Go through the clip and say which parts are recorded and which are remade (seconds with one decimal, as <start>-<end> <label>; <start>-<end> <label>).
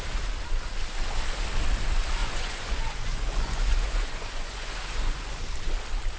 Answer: 0.0-2.2 recorded; 2.2-5.4 remade; 5.4-6.2 recorded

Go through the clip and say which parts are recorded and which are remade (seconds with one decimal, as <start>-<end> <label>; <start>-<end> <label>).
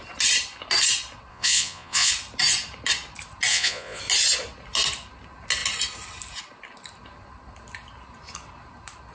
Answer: 0.0-1.3 recorded; 1.3-2.1 remade; 2.1-3.5 recorded; 3.5-4.0 remade; 4.0-9.1 recorded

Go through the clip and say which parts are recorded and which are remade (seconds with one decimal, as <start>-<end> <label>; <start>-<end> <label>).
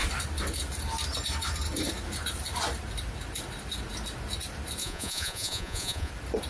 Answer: 0.0-4.8 recorded; 4.8-6.1 remade; 6.1-6.5 recorded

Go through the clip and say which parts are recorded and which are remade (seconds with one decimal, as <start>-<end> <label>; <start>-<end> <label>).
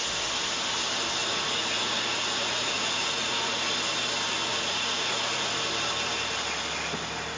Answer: 0.0-1.2 recorded; 1.2-3.7 remade; 3.7-4.5 recorded; 4.5-5.5 remade; 5.5-7.4 recorded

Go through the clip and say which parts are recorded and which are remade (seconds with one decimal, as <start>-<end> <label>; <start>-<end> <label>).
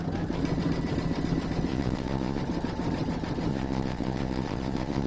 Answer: 0.0-1.7 recorded; 1.7-2.4 remade; 2.4-3.5 recorded; 3.5-5.1 remade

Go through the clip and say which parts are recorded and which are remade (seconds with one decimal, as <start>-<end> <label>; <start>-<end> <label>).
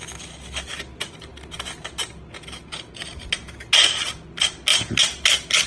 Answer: 0.0-5.7 recorded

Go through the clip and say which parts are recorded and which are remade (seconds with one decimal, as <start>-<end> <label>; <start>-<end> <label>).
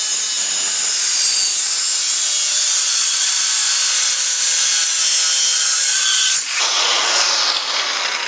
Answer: 0.0-2.8 recorded; 2.8-3.4 remade; 3.4-5.5 recorded; 5.5-7.0 remade; 7.0-8.3 recorded